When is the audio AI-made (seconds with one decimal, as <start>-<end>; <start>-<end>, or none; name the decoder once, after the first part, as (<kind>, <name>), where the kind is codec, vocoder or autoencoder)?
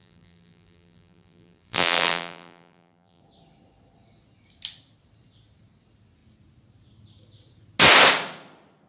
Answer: 0.0-3.2 (vocoder, BigVGAN v2)